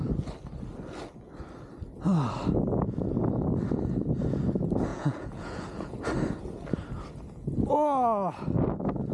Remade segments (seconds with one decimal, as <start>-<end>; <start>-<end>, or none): 4.9-6.0